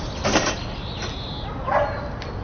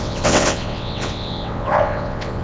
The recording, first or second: first